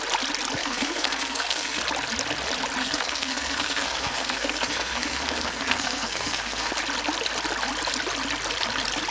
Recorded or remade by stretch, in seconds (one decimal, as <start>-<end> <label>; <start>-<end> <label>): 0.0-0.6 recorded; 0.6-1.8 remade; 1.8-2.8 recorded; 2.8-6.7 remade; 6.7-9.1 recorded